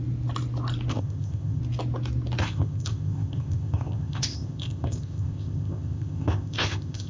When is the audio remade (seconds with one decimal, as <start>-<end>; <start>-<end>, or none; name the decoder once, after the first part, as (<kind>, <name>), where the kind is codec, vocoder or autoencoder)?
0.9-1.6 (codec, ZipCodec); 2.4-7.1